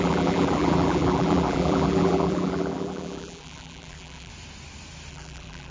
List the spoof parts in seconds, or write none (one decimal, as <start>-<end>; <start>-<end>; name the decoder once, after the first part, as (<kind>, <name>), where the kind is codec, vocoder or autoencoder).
0.0-4.3 (vocoder, BigVGAN v2); 5.1-5.7